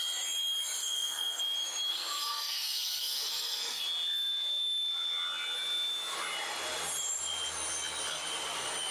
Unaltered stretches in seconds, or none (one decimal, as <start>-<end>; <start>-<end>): 0.0-0.8; 1.4-1.9; 3.8-8.9